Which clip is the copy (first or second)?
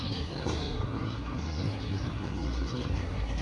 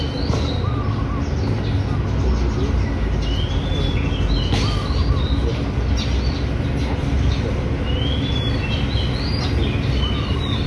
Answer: first